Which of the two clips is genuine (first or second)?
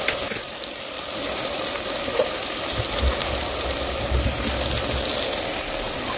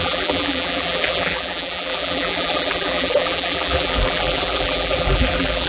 first